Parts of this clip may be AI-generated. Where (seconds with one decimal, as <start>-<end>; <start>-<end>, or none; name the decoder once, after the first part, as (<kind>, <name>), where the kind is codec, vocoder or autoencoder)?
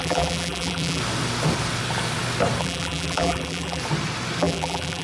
0.0-1.0 (vocoder, BigVGAN v2); 2.6-3.8; 4.4-5.0